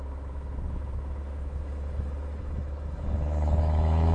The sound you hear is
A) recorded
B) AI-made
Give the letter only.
B